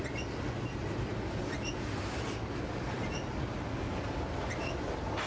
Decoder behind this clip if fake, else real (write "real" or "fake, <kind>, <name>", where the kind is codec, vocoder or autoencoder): real